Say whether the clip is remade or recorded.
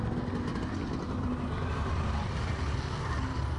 recorded